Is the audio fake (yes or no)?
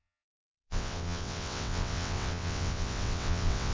yes